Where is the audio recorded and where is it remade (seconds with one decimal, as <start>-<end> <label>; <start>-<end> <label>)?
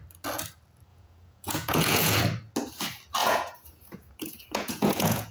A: 0.0-0.9 recorded; 0.9-2.2 remade; 2.2-3.2 recorded; 3.2-5.3 remade